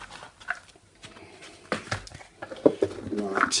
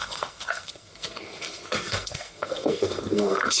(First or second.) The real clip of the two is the first